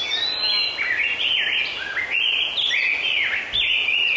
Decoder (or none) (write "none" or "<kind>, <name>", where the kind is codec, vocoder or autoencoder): none